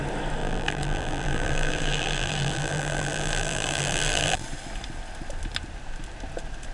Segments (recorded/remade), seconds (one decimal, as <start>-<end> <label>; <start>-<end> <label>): 0.0-0.4 recorded; 0.4-4.4 remade; 4.4-6.7 recorded